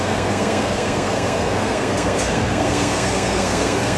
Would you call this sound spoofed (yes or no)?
yes